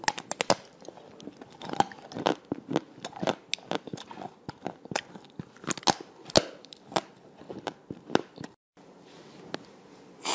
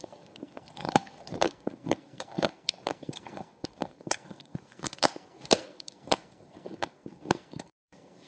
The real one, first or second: first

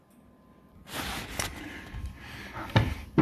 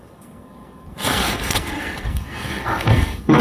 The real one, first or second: first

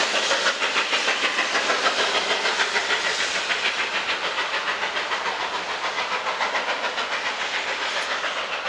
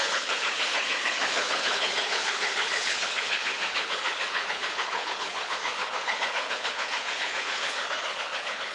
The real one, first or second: first